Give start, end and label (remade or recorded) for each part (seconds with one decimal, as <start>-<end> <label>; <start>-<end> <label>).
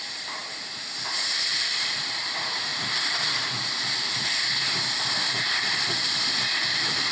0.0-0.4 remade; 0.4-1.3 recorded; 1.3-2.7 remade; 2.7-3.2 recorded; 3.2-7.1 remade